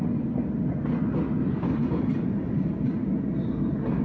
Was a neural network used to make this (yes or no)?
no